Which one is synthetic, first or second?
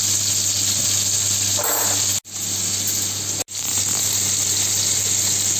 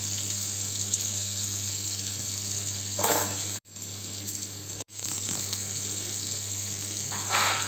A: second